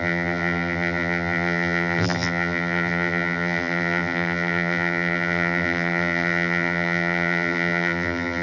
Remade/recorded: remade